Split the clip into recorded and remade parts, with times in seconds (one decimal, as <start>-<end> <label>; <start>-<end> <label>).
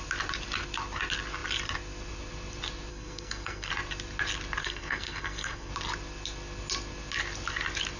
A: 0.0-2.9 recorded; 2.9-3.7 remade; 3.7-4.6 recorded; 4.6-5.7 remade; 5.7-8.0 recorded